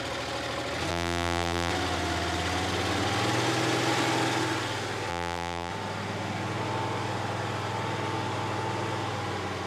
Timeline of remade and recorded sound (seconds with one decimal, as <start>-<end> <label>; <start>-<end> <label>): 0.0-0.9 recorded; 0.9-1.7 remade; 1.7-5.1 recorded; 5.1-5.7 remade; 5.7-9.7 recorded